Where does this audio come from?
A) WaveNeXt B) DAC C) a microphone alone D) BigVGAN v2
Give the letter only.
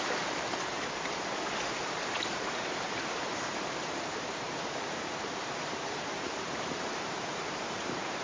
D